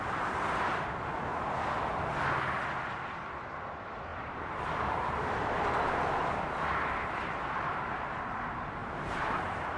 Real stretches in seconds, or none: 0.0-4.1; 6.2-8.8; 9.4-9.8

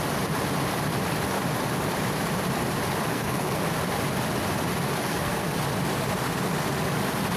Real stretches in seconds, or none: 0.0-3.1; 3.6-5.0; 5.5-7.4

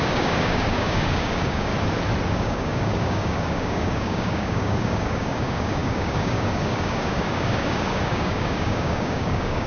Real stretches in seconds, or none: 1.7-2.3

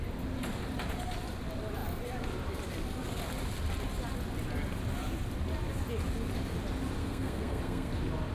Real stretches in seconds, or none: 0.0-7.0; 7.9-8.3